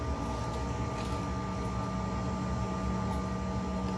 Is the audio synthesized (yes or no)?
no